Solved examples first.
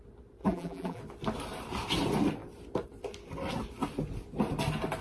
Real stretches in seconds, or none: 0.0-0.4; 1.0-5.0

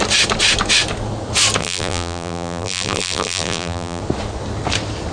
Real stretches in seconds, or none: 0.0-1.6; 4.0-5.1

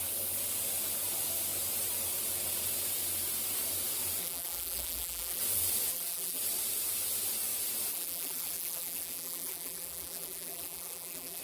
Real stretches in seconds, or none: 0.0-4.2; 5.4-5.9; 6.4-7.9

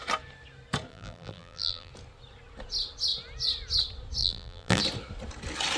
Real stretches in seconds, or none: 0.0-0.9; 1.9-4.2; 4.8-5.8

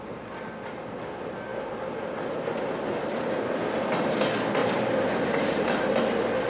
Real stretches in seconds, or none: 0.0-4.6; 6.1-6.5